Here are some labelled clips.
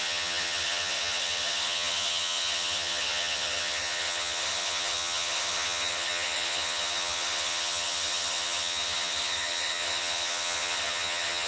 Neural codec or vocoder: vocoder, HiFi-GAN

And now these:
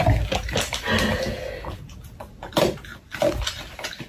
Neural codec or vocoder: none